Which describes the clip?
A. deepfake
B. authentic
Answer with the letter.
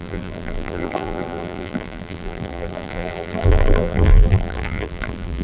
A